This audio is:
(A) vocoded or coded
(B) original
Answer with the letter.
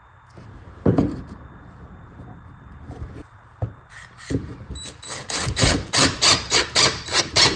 A